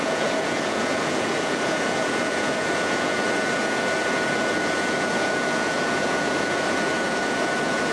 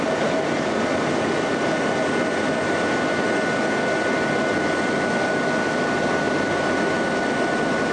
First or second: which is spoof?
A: first